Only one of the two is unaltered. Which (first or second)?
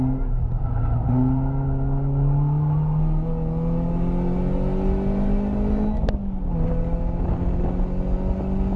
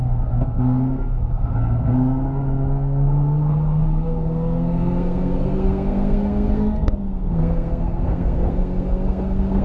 first